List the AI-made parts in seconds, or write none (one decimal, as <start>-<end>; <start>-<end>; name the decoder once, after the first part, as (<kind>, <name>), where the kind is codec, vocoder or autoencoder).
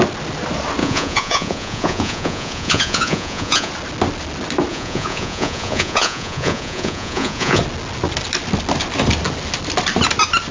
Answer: 0.8-3.7 (vocoder, Vocos); 4.7-7.6